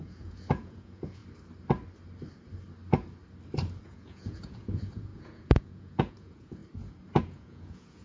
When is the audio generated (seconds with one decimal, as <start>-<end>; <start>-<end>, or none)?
0.0-1.2; 3.8-6.6; 7.2-8.0